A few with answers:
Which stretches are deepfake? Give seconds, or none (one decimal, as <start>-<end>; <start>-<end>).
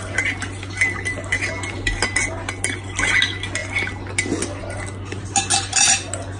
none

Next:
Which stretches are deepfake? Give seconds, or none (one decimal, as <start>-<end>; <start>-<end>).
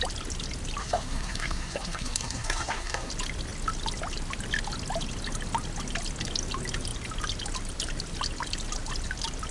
0.8-3.1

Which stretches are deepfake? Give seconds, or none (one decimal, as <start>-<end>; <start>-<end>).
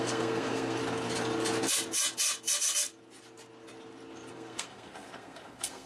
0.0-0.8; 4.3-5.9